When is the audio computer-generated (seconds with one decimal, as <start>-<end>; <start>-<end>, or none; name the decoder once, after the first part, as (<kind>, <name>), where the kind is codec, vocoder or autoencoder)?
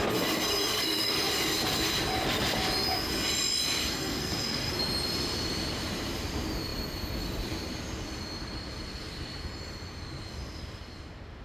0.7-1.3 (codec, SNAC); 3.8-4.7